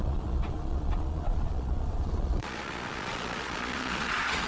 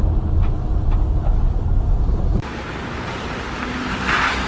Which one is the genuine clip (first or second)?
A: second